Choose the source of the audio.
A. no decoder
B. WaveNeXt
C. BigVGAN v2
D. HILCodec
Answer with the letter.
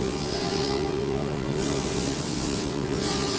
B